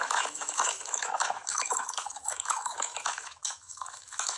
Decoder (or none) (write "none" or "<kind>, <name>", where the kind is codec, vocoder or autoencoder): autoencoder, DAC-VAE